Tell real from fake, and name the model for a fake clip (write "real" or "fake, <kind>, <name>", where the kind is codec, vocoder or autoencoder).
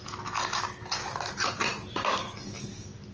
real